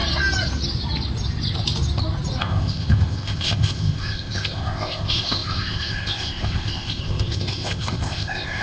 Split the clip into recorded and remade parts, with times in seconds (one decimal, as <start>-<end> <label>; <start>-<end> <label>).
0.0-2.4 recorded; 2.4-8.6 remade